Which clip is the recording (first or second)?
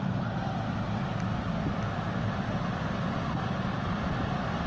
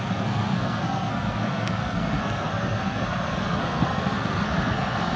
first